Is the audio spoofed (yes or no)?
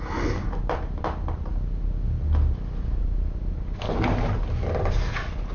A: no